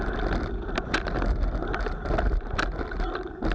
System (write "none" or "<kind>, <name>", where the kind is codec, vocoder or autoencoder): none